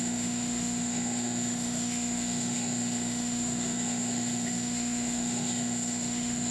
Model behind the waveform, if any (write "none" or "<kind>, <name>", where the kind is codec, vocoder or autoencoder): autoencoder, DAC-VAE